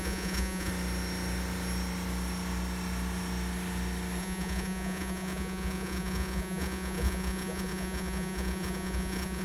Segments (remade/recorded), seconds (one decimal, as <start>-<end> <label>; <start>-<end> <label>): 0.0-0.7 remade; 0.7-4.2 recorded; 4.2-9.4 remade